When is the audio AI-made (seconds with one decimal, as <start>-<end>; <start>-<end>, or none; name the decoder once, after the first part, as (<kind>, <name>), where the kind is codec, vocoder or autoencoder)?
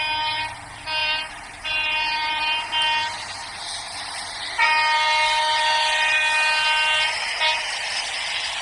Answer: 1.0-2.4 (vocoder, BigVGAN v2)